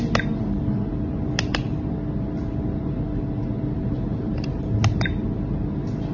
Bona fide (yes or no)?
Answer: yes